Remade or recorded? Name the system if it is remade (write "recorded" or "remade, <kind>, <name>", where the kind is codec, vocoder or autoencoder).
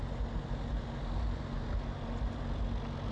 recorded